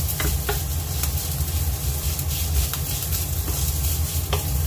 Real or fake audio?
real